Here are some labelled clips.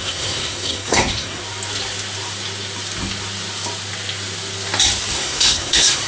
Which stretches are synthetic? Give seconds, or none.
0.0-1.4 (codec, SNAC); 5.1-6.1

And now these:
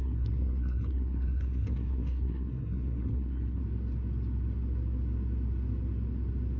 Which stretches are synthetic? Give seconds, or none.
0.0-3.6 (codec, SNAC)

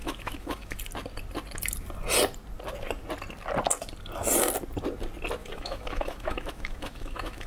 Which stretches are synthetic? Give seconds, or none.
0.0-0.8 (autoencoder, DAC-VAE); 5.4-7.5

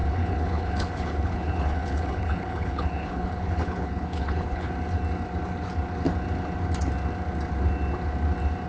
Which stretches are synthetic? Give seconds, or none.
0.0-4.7 (codec, HILCodec)

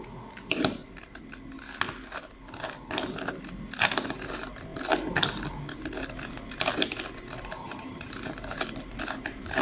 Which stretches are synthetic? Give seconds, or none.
7.6-8.1 (vocoder, HiFi-GAN)

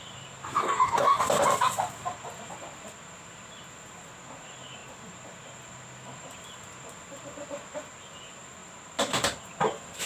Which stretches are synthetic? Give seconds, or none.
0.6-1.2 (codec, DAC)